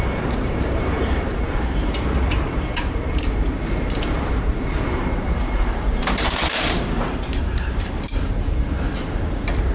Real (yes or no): no